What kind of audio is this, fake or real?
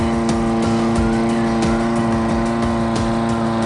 real